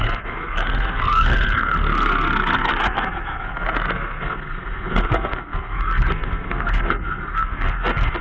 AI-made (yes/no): yes